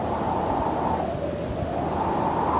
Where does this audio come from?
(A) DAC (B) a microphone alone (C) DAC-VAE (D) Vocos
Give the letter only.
B